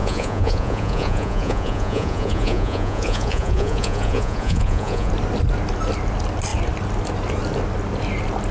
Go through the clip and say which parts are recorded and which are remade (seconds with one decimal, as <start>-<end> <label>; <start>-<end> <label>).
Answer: 0.0-5.1 remade; 5.1-8.5 recorded